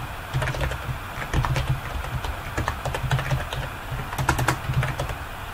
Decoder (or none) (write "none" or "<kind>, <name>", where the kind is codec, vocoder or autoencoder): none